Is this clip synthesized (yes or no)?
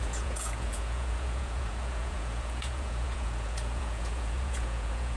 yes